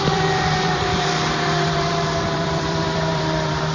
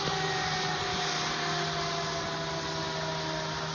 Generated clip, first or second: first